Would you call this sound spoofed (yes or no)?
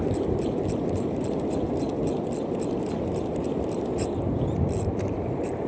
no